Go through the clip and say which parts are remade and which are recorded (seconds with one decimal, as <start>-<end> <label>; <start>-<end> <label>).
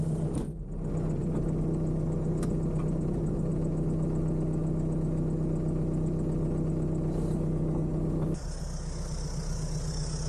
0.0-10.3 recorded